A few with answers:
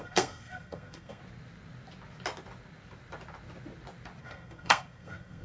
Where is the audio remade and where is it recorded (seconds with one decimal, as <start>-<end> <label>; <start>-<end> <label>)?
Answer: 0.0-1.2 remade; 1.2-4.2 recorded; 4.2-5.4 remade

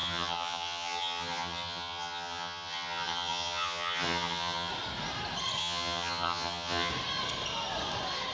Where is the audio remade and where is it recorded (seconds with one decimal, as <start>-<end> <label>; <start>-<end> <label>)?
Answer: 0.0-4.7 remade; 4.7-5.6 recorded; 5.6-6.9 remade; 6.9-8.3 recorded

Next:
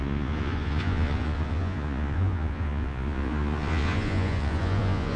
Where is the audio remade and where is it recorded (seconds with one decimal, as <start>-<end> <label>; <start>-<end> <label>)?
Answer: 0.0-5.2 remade